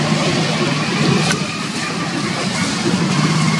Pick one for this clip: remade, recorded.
recorded